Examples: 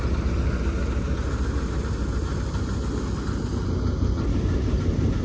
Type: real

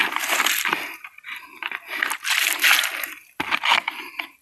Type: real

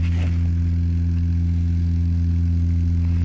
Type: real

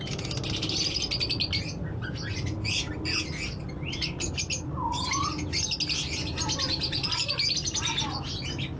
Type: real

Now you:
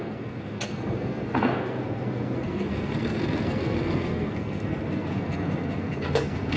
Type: fake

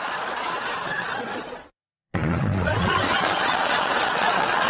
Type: fake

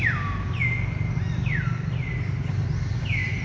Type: real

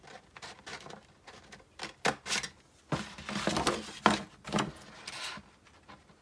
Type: real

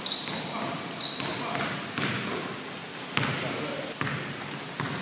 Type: real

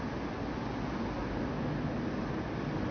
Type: real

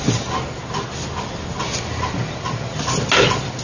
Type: real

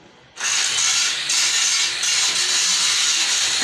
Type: real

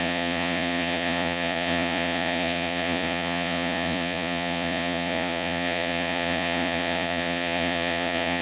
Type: fake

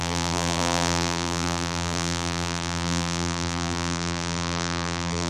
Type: fake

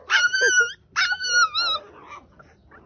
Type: real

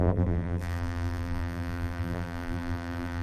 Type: fake